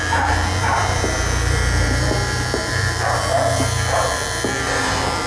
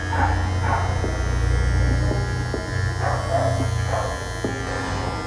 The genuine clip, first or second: second